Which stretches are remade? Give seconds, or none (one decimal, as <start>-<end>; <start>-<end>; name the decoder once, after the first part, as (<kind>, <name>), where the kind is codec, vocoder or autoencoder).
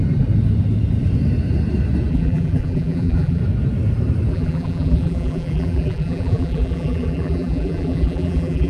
2.1-3.4 (vocoder, BigVGAN v2); 4.3-8.7